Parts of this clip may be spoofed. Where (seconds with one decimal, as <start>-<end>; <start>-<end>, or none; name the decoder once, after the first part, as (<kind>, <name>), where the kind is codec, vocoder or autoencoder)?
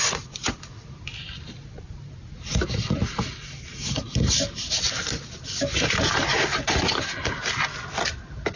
none